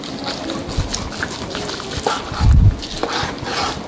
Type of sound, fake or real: real